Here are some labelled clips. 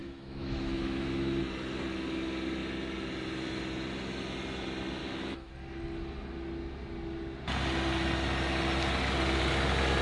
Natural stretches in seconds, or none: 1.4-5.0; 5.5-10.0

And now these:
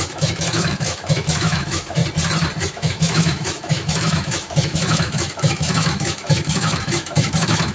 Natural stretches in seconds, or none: 2.0-2.7

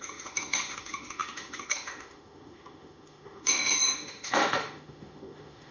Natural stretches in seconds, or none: none